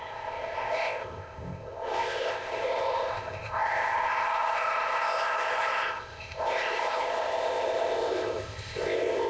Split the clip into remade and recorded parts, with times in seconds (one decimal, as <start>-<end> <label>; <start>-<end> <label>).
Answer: 0.0-9.3 remade